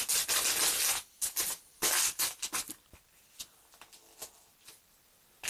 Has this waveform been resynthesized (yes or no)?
no